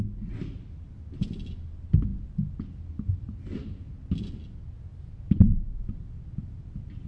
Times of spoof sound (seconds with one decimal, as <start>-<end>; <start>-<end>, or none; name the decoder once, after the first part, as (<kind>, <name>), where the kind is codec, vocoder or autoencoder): 4.9-5.7 (vocoder, BigVGAN v2)